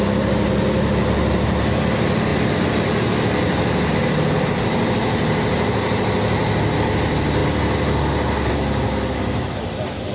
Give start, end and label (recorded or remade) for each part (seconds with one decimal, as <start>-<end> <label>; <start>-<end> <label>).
0.0-10.1 recorded